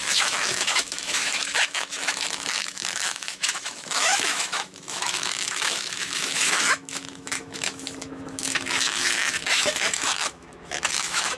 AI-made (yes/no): yes